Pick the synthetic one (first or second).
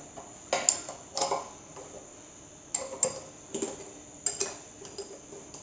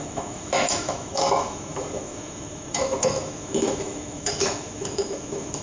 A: second